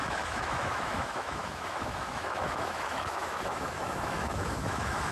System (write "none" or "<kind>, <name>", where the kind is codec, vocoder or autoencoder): autoencoder, DAC-VAE